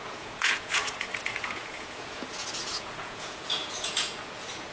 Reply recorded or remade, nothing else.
remade